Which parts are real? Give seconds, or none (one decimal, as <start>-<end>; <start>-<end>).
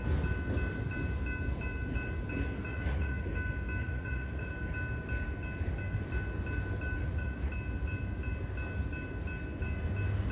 0.0-2.7; 3.3-3.8; 4.5-7.0; 7.5-10.3